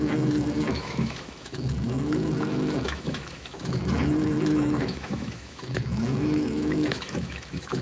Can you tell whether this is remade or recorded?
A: remade